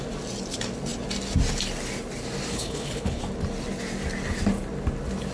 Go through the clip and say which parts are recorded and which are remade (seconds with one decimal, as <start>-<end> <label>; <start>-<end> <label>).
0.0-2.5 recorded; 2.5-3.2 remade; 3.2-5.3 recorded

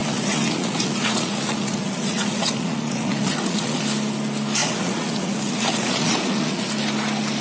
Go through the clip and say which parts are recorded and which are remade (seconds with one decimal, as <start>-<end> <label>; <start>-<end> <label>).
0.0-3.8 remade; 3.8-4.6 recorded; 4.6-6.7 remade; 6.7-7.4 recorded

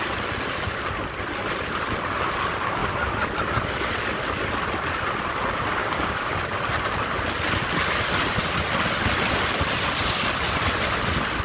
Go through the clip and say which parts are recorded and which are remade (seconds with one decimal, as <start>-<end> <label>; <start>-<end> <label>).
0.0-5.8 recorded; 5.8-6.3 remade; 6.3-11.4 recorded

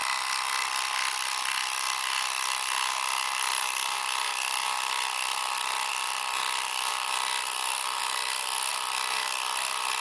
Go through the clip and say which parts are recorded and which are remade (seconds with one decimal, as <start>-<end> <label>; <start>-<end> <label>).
0.0-3.3 recorded; 3.3-5.9 remade; 5.9-6.9 recorded; 6.9-8.0 remade; 8.0-8.7 recorded; 8.7-10.0 remade

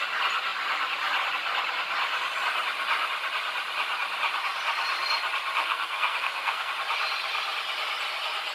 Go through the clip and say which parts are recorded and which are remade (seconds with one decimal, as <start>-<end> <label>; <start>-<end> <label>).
0.0-5.6 recorded; 5.6-6.7 remade; 6.7-8.5 recorded

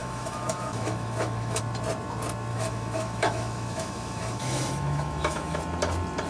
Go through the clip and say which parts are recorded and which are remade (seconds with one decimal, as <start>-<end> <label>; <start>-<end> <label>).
0.0-1.6 remade; 1.6-2.5 recorded; 2.5-5.6 remade; 5.6-6.3 recorded